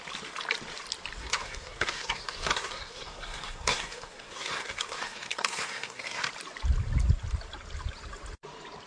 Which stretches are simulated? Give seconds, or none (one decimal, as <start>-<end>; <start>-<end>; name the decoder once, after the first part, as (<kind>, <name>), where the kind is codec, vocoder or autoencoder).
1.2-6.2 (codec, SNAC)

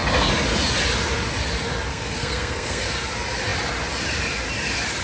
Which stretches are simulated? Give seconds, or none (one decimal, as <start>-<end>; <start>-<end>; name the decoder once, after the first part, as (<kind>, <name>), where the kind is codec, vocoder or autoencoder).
1.9-2.8 (codec, SNAC)

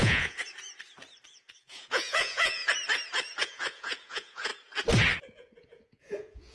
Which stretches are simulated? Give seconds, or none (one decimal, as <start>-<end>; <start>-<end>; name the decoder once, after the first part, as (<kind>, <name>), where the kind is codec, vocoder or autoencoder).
0.0-0.4 (vocoder, Vocos); 1.3-2.6; 3.4-4.5; 5.2-6.5

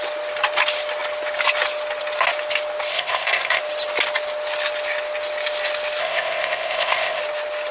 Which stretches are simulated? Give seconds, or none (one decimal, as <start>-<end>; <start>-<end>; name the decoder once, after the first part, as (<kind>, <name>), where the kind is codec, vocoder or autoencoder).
2.9-3.6 (codec, ZipCodec); 6.0-7.2

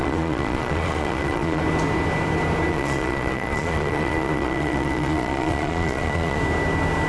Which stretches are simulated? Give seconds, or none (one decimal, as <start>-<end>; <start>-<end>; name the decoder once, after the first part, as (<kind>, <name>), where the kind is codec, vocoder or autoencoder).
0.0-1.6 (vocoder, Vocos); 2.7-6.4

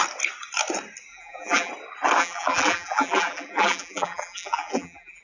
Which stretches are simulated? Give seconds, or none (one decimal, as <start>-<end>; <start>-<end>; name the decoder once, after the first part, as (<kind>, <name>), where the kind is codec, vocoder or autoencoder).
1.1-1.7 (vocoder, BigVGAN v2); 2.2-5.2

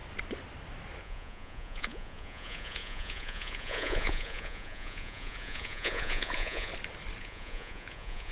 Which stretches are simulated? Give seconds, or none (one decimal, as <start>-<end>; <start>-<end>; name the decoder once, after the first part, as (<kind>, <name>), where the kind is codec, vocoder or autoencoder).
1.0-6.7 (vocoder, Vocos); 7.2-8.3

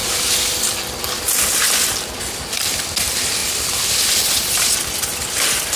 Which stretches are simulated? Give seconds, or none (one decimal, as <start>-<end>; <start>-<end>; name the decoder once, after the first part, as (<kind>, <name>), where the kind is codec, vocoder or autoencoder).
3.4-4.2 (vocoder, BigVGAN v2)